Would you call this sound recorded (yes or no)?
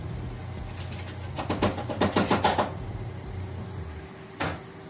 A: yes